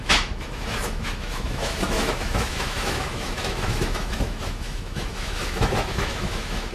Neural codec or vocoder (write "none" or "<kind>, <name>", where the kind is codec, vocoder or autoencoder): autoencoder, DAC-VAE